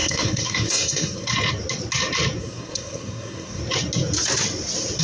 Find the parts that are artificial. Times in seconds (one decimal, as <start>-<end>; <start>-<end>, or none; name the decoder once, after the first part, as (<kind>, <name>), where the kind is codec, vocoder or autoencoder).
0.0-1.3 (codec, SNAC); 2.4-3.6